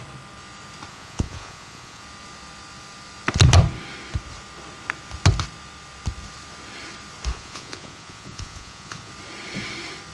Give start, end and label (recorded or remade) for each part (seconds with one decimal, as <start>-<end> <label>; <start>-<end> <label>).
0.0-0.9 recorded; 0.9-2.0 remade; 2.0-7.3 recorded; 7.3-9.1 remade; 9.1-10.1 recorded